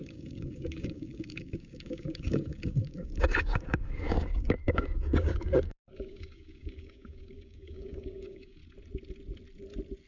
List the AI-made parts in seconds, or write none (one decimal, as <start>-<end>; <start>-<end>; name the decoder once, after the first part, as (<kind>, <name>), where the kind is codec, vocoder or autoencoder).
0.0-8.6 (codec, DAC)